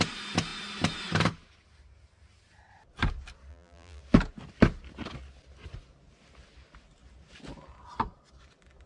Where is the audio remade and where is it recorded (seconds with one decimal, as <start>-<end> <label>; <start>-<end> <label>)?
0.0-3.5 recorded; 3.5-4.0 remade; 4.0-8.9 recorded